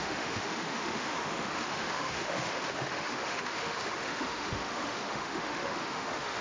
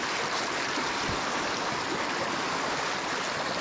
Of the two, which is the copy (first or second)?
first